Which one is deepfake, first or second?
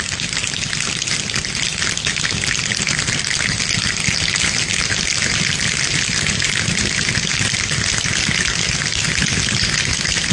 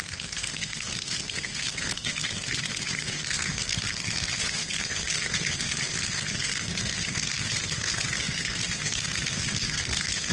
second